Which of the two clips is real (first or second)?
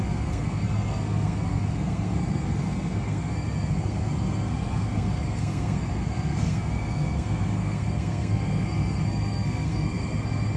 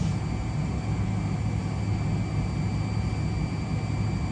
second